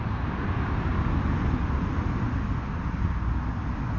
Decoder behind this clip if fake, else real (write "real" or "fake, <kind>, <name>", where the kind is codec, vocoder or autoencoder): real